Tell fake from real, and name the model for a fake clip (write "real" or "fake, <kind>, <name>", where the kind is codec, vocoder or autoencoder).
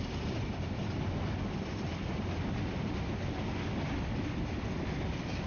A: real